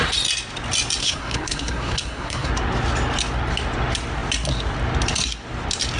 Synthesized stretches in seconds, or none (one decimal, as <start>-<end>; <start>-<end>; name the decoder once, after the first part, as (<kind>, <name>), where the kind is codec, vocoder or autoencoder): 1.0-2.5 (codec, SNAC)

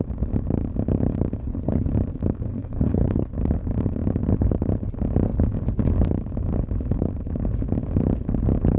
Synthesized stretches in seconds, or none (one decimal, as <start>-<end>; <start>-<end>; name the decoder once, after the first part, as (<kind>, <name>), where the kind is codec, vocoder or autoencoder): 1.4-1.9 (codec, HILCodec); 2.5-3.3

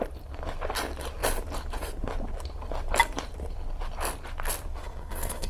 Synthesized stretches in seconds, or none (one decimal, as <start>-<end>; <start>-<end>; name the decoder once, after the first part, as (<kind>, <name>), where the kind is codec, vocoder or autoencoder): 4.8-5.5 (codec, SNAC)

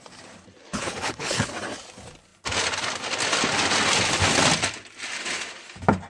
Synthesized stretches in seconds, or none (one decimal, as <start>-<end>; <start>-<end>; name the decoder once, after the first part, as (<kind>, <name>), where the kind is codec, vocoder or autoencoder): 0.7-1.5 (codec, HILCodec)

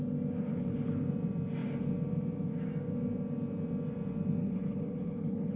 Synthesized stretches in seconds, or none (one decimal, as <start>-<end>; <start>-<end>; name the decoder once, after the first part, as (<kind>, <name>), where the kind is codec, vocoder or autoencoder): 0.5-1.0 (codec, HILCodec); 4.4-5.6

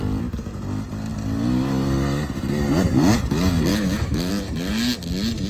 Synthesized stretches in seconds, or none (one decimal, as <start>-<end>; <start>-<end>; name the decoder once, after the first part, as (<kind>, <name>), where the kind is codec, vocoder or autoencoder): 3.7-4.3 (autoencoder, DAC-VAE)